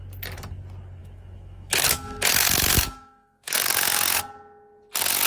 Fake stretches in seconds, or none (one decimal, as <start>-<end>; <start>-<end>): 1.0-4.2